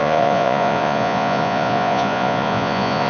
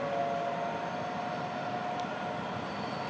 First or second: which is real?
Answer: second